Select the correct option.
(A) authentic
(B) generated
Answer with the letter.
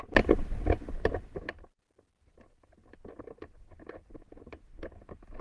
A